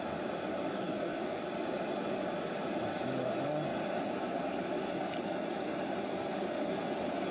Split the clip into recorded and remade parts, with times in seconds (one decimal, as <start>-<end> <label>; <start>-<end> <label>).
0.0-0.8 recorded; 0.8-1.4 remade; 1.4-7.3 recorded